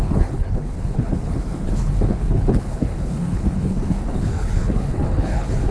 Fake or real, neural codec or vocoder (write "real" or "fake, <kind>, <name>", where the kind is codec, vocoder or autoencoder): fake, codec, HILCodec